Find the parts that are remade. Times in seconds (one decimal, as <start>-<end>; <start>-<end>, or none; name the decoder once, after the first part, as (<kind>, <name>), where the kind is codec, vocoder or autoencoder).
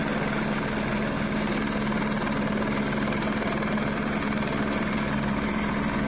none